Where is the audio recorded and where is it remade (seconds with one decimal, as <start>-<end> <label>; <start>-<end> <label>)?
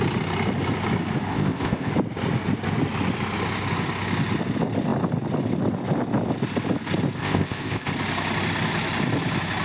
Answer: 0.0-1.3 recorded; 1.3-1.9 remade; 1.9-7.2 recorded; 7.2-7.9 remade; 7.9-9.6 recorded